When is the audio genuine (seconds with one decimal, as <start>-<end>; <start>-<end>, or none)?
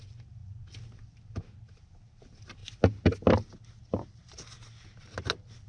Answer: 0.0-5.7